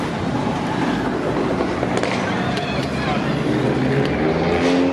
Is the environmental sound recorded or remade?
recorded